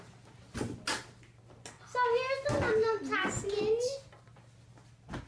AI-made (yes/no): no